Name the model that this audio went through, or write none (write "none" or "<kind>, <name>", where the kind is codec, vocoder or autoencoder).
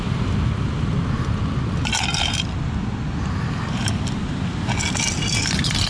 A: none